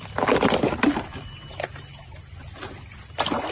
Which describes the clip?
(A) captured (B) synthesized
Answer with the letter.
A